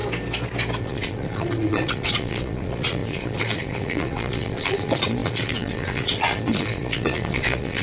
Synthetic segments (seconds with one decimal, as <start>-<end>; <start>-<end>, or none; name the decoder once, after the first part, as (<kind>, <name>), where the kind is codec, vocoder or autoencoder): 0.8-7.8 (vocoder, Vocos)